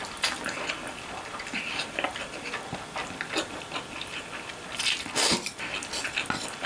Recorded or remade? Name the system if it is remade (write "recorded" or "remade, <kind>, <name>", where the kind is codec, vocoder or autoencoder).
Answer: recorded